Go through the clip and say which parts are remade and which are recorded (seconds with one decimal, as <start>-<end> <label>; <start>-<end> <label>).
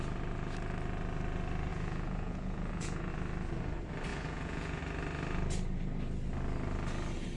0.0-1.7 recorded; 1.7-3.1 remade; 3.1-4.1 recorded; 4.1-4.8 remade; 4.8-7.4 recorded